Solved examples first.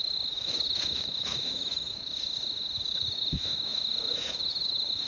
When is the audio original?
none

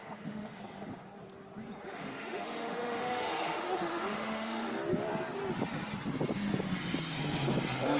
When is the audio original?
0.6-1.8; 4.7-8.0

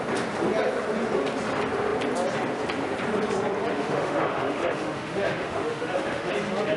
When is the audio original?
0.0-3.7; 6.3-6.8

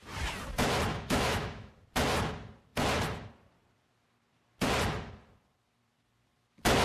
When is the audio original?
0.0-0.9; 1.7-6.8

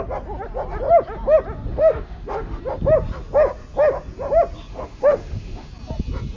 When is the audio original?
0.0-1.7; 2.6-4.7; 5.7-6.4

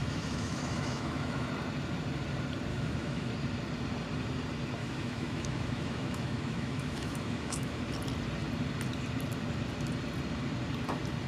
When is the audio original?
1.5-2.7; 3.3-4.8; 7.8-11.3